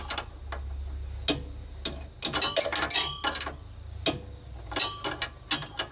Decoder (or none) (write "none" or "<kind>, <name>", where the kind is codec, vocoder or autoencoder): none